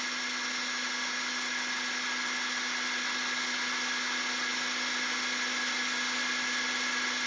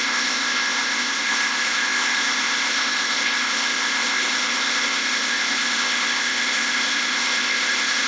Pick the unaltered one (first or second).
first